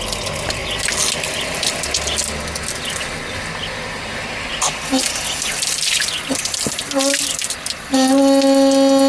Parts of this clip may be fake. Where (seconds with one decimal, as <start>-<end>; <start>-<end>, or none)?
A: none

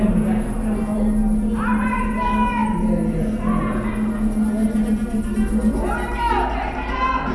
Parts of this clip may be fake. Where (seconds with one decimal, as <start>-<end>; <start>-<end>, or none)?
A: none

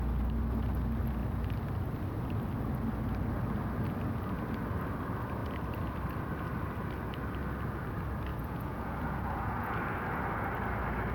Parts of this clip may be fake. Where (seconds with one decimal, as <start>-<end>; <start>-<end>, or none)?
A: 8.3-9.8

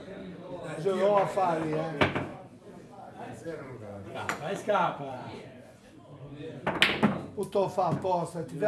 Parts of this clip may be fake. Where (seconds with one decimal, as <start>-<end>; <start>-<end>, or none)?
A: 0.0-0.5; 2.3-6.0

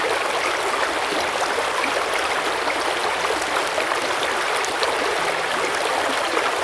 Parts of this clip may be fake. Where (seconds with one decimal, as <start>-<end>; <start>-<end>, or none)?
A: none

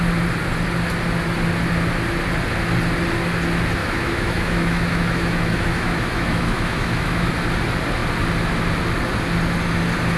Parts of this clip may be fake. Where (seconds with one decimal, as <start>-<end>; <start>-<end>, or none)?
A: 3.8-7.3